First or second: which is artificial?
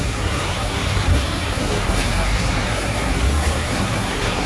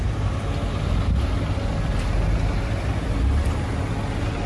first